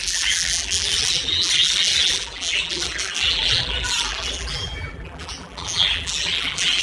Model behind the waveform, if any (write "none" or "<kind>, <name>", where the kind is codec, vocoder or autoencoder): vocoder, BigVGAN v2